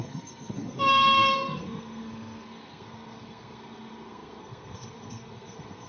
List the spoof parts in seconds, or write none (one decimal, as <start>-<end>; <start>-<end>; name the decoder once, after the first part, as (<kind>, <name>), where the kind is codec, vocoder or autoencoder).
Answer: 0.0-5.9 (codec, SNAC)